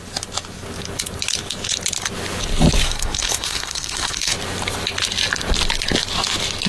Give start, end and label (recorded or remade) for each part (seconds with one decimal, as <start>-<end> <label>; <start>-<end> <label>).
0.0-2.8 recorded; 2.8-4.3 remade; 4.3-6.7 recorded